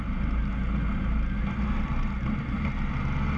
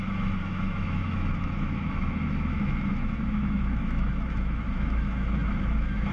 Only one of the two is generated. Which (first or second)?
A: second